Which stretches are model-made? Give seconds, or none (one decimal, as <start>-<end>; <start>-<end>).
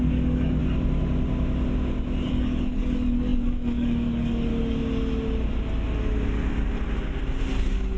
0.0-0.6; 2.3-4.5; 7.6-8.0